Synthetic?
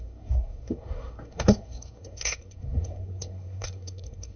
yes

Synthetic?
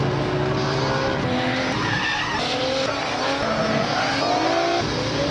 no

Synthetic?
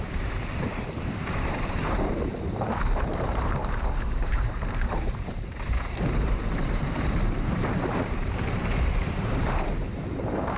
yes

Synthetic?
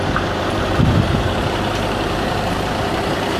yes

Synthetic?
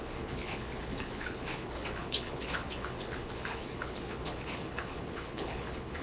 yes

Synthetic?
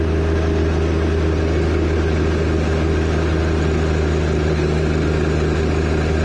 no